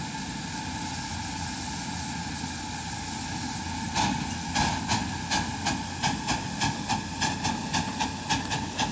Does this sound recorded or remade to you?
recorded